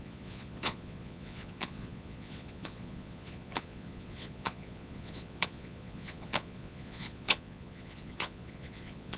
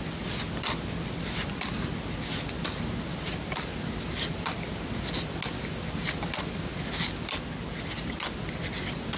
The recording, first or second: second